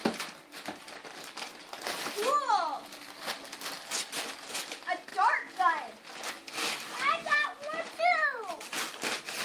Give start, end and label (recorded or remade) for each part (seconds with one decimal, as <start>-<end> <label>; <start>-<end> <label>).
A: 0.0-9.4 recorded